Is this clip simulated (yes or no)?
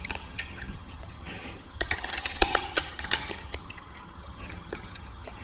yes